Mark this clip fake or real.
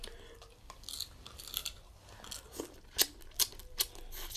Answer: real